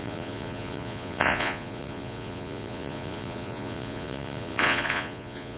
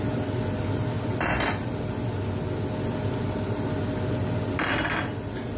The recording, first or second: second